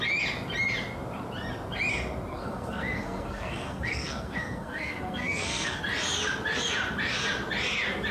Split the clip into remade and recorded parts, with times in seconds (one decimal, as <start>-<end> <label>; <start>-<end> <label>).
0.0-2.3 recorded; 2.3-5.8 remade; 5.8-8.1 recorded